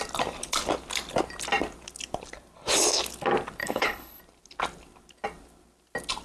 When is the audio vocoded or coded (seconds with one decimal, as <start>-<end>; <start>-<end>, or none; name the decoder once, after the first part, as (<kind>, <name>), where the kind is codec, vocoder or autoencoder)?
3.6-4.2 (codec, HILCodec)